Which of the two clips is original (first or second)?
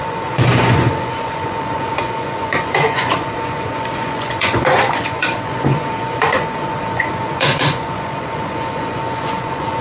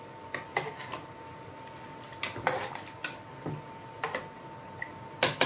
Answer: second